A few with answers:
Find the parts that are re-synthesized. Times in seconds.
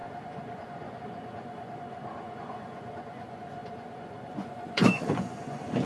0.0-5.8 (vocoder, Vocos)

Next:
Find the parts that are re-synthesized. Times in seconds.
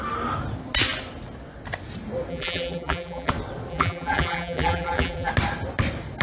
2.3-3.3 (vocoder, BigVGAN v2); 3.7-5.3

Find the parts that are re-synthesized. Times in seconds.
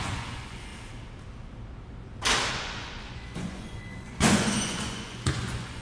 0.0-0.7 (vocoder, Vocos); 2.5-5.8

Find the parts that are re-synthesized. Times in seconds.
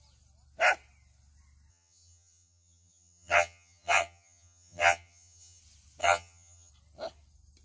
1.7-5.6 (vocoder, HiFi-GAN); 6.0-6.7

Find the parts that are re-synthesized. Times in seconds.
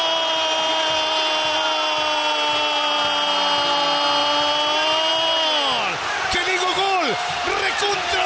none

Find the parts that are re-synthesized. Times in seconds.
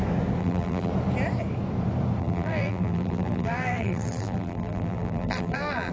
0.4-0.9 (vocoder, BigVGAN v2); 2.2-5.9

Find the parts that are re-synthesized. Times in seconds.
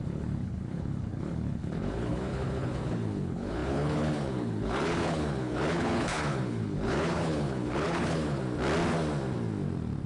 0.0-8.4 (codec, HILCodec)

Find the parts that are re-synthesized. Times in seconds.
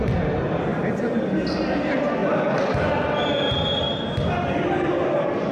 none